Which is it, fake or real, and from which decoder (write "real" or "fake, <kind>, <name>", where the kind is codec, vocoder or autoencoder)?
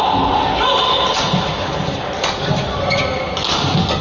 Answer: real